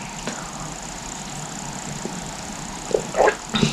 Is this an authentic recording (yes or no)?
yes